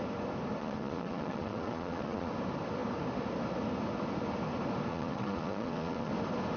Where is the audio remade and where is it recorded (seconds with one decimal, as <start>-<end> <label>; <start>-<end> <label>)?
0.0-0.6 recorded; 0.6-2.3 remade; 2.3-4.9 recorded; 4.9-6.1 remade; 6.1-6.6 recorded